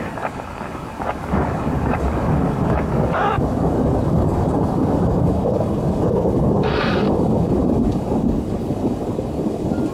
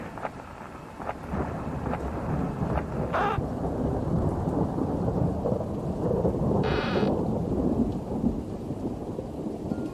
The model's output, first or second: first